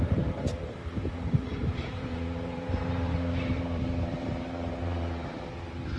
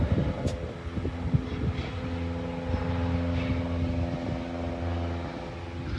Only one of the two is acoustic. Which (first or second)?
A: second